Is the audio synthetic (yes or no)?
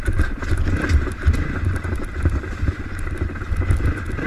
no